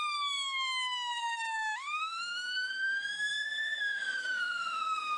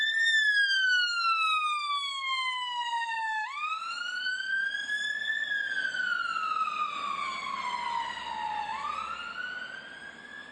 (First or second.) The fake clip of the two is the first